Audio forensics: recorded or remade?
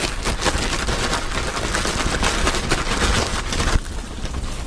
recorded